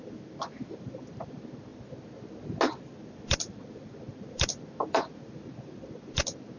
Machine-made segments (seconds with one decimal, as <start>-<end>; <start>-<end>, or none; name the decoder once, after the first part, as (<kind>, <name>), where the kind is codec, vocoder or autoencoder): 0.0-1.7 (vocoder, BigVGAN v2); 3.0-6.6